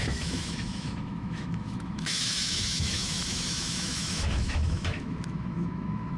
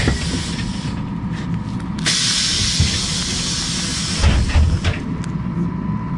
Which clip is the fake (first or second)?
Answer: first